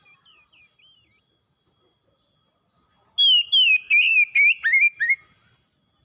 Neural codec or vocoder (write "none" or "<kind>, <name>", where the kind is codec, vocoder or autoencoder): none